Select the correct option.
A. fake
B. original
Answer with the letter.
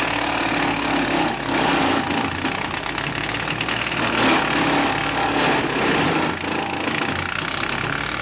B